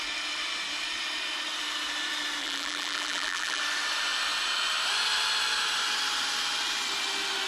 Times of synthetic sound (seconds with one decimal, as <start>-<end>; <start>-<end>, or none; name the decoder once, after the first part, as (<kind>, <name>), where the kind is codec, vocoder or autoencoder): 2.4-3.6 (vocoder, BigVGAN v2)